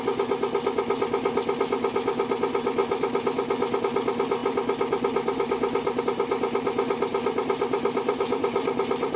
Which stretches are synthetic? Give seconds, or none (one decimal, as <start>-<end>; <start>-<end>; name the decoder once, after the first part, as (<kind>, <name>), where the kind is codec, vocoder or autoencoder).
7.1-9.2 (vocoder, BigVGAN v2)